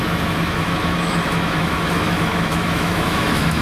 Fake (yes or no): yes